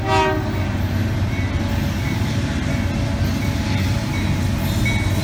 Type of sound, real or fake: real